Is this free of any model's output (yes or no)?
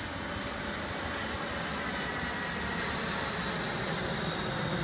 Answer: yes